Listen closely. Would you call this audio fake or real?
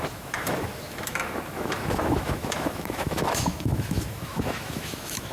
fake